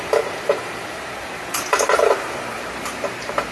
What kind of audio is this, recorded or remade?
remade